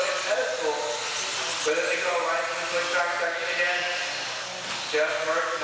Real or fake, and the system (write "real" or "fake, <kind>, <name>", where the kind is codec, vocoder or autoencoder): real